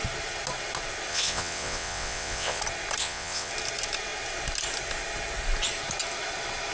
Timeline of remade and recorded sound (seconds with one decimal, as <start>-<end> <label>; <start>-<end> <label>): 0.0-1.1 recorded; 1.1-2.6 remade; 2.6-3.0 recorded; 3.0-3.5 remade; 3.5-6.7 recorded